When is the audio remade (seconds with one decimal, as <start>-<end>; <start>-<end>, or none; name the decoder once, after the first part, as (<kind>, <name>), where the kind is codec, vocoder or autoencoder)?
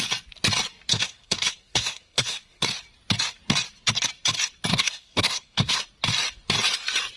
0.9-2.6 (codec, SNAC); 4.7-5.8